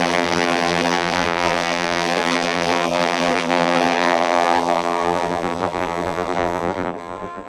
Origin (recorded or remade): remade